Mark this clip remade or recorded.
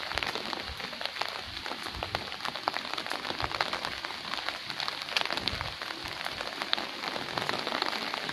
recorded